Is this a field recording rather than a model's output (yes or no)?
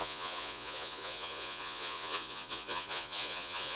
no